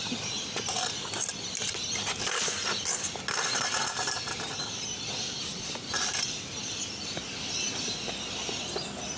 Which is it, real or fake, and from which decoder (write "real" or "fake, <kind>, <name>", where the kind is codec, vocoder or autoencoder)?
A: real